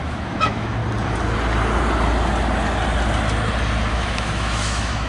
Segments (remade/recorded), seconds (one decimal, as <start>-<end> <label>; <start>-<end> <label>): 0.0-0.8 remade; 0.8-3.9 recorded; 3.9-5.1 remade

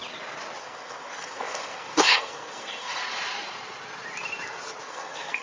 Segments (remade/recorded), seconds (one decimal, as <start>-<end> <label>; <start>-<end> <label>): 0.0-0.6 recorded; 0.6-3.0 remade; 3.0-4.8 recorded; 4.8-5.4 remade

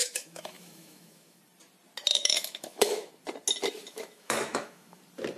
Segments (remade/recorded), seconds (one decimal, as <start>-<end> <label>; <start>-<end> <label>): 0.0-1.4 remade; 1.4-2.1 recorded; 2.1-3.1 remade; 3.1-3.8 recorded; 3.8-5.0 remade; 5.0-5.4 recorded

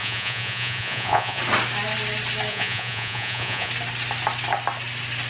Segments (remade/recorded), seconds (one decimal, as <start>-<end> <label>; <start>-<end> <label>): 0.0-1.4 remade; 1.4-2.5 recorded; 2.5-3.7 remade; 3.7-5.3 recorded

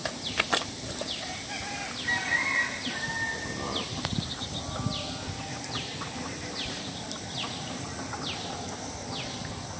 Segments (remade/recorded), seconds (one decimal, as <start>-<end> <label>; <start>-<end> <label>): 0.0-9.8 recorded